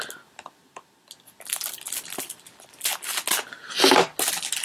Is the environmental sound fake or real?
real